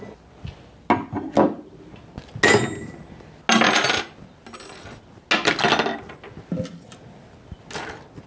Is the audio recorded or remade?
recorded